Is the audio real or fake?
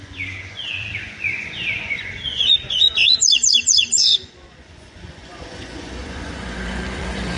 fake